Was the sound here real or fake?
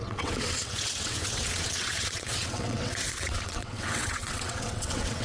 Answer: fake